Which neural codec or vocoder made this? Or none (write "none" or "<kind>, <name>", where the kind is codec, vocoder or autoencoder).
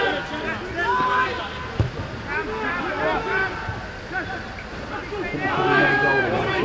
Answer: none